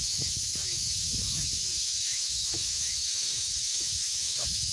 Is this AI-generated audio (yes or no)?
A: yes